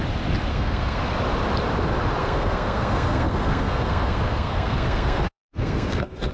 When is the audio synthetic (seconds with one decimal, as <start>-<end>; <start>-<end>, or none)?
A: 0.5-1.0; 2.2-6.3